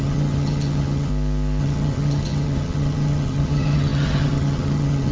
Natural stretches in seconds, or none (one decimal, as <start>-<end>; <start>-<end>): 1.1-1.6